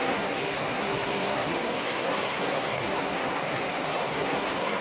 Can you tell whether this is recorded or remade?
remade